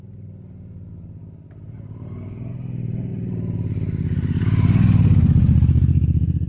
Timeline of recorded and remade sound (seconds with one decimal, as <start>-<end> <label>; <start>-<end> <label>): 0.0-3.1 recorded; 3.1-6.5 remade